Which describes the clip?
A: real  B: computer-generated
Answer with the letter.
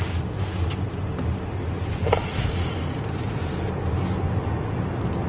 A